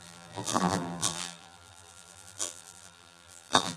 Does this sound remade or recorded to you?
remade